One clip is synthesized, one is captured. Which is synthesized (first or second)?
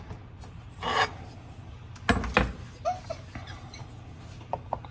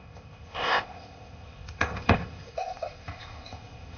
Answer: second